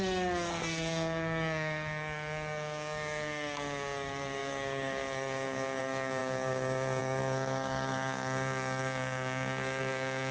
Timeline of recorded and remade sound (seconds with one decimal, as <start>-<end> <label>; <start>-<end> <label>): 0.0-10.3 remade